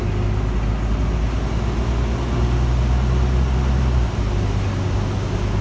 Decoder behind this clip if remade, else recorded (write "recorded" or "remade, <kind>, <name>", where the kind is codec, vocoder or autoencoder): recorded